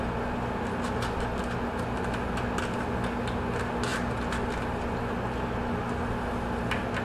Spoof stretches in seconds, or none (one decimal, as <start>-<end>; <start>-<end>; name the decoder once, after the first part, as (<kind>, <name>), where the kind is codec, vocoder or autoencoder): none